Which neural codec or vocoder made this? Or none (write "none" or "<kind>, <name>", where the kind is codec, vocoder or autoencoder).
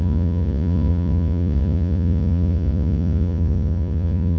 vocoder, Vocos